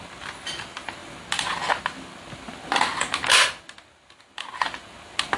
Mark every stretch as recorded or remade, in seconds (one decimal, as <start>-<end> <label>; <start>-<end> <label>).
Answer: 0.0-5.4 recorded